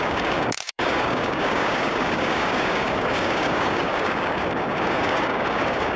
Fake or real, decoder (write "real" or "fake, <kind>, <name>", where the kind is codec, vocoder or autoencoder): fake, codec, DAC